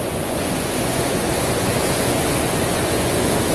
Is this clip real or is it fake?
fake